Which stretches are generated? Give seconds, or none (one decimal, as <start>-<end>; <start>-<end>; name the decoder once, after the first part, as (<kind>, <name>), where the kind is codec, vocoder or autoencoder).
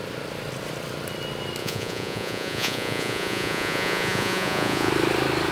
1.6-4.9 (vocoder, Vocos)